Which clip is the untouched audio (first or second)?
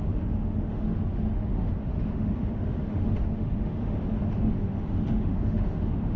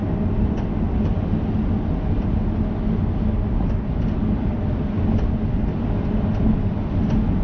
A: second